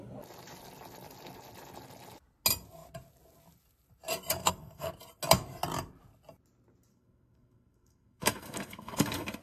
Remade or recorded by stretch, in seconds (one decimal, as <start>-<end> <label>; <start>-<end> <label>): 0.0-4.4 recorded; 4.4-4.9 remade; 4.9-6.9 recorded; 6.9-9.4 remade